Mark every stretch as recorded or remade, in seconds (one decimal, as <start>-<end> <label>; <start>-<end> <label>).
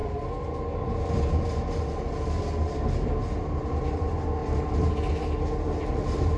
0.0-6.4 recorded